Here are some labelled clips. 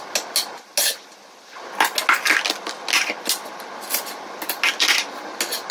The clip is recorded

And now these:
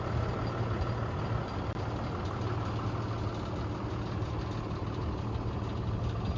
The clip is recorded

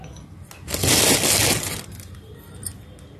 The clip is recorded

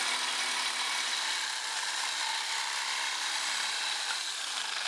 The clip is recorded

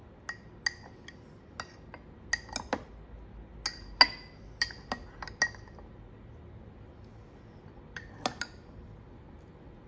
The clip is recorded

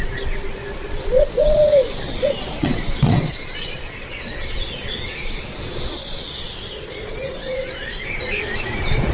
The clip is remade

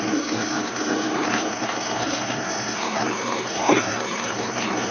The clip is remade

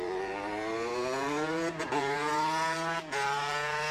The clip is remade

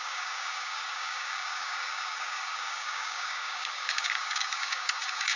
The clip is remade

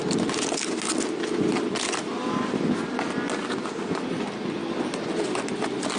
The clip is recorded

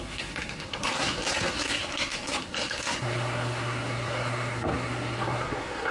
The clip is remade